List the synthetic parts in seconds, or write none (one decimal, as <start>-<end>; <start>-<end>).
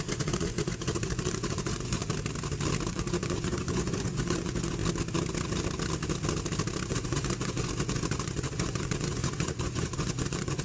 0.0-2.0; 2.9-4.8; 6.9-10.6